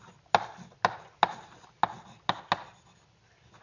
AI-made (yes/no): no